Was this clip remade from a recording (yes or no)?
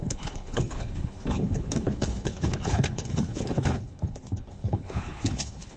yes